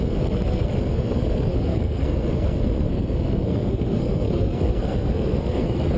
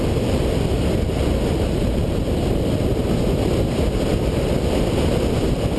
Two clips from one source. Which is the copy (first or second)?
first